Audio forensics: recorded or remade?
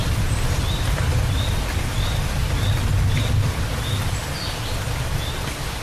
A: recorded